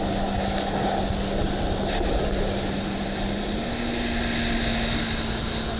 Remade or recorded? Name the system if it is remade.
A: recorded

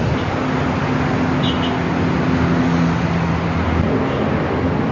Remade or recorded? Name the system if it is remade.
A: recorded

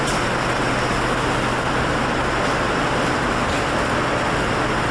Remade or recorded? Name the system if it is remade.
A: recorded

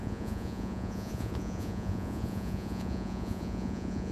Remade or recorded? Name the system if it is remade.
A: remade, vocoder, Vocos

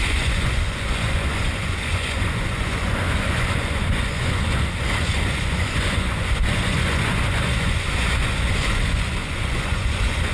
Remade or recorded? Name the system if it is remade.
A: remade, vocoder, Vocos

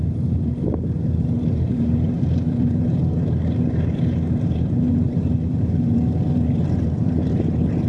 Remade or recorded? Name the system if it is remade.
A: remade, vocoder, BigVGAN v2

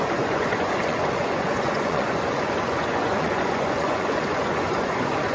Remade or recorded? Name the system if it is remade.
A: remade, vocoder, Vocos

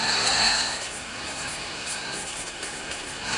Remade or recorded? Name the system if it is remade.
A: remade, codec, SNAC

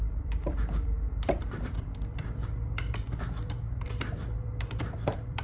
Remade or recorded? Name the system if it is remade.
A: remade, vocoder, BigVGAN v2